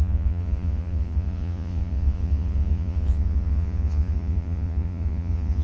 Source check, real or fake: fake